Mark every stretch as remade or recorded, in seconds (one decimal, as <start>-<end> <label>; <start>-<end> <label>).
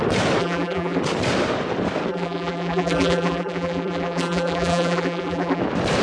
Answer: 0.0-0.4 recorded; 0.4-1.0 remade; 1.0-2.1 recorded; 2.1-5.6 remade; 5.6-6.0 recorded